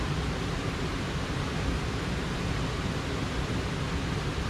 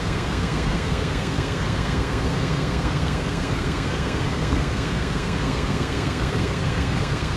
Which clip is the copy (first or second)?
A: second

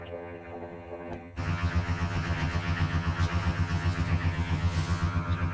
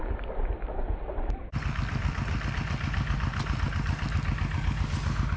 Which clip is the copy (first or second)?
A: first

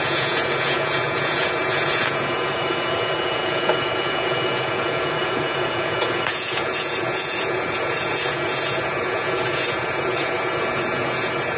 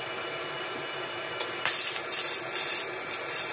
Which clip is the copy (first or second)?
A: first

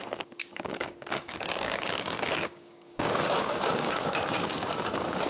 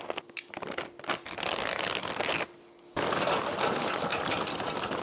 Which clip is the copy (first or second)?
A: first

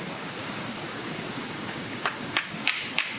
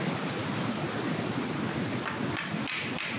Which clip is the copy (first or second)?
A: first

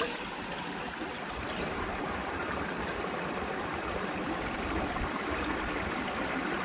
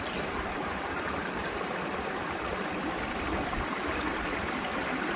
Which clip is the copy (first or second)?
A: first